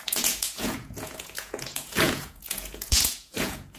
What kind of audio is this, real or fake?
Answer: fake